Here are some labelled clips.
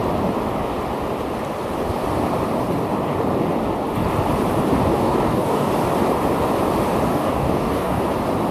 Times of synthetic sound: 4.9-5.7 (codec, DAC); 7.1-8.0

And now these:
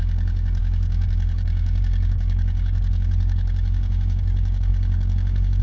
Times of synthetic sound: 0.0-5.6 (codec, DAC)

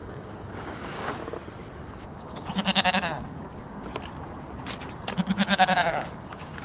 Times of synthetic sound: 0.0-1.2 (codec, DAC); 1.9-3.9; 5.3-6.6

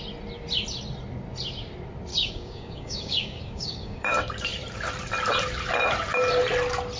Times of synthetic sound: 2.1-4.1 (codec, DAC)

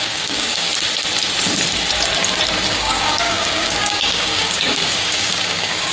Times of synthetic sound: 0.0-0.7 (codec, DAC); 2.7-5.9

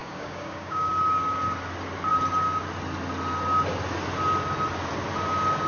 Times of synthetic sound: 0.0-0.9 (codec, DAC)

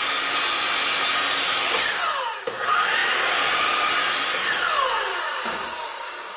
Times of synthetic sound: 1.5-2.0 (codec, DAC); 5.1-6.4

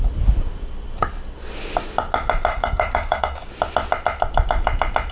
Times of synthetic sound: 2.5-3.5 (codec, DAC)